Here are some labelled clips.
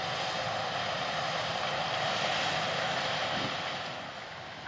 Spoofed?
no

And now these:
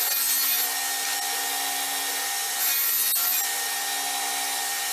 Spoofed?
no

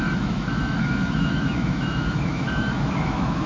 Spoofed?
yes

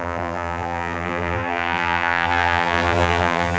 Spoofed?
yes